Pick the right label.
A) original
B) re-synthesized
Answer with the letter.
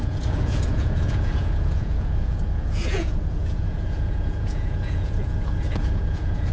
B